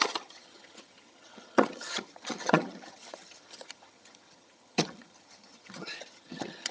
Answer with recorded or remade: remade